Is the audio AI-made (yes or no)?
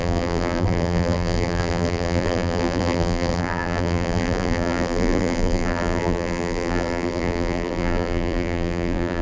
yes